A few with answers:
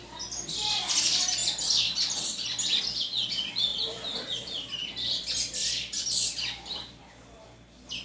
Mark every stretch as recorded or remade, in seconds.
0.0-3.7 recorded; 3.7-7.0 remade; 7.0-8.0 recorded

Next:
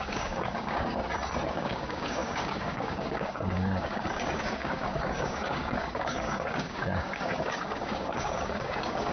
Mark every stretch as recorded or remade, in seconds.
0.0-1.0 remade; 1.0-1.5 recorded; 1.5-9.1 remade

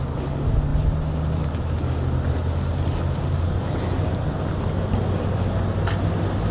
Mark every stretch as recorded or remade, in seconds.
0.0-6.5 recorded

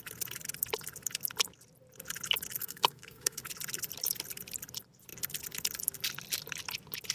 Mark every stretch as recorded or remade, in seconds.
0.0-2.6 recorded; 2.6-3.4 remade; 3.4-7.1 recorded

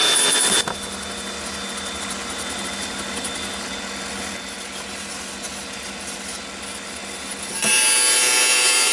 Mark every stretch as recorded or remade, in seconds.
0.0-8.9 recorded

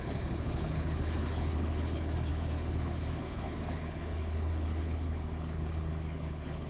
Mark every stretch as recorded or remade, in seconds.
0.0-6.7 remade